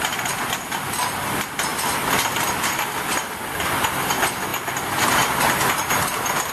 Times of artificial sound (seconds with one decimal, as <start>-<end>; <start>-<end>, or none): none